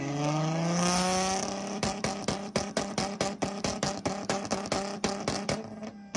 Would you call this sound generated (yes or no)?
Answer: no